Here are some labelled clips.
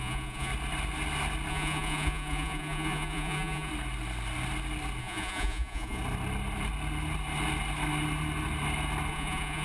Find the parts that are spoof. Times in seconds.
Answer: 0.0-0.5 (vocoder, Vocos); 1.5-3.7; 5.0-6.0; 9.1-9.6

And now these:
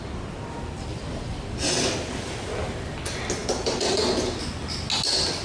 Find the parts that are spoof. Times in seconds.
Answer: 0.9-1.7 (vocoder, BigVGAN v2); 3.4-4.0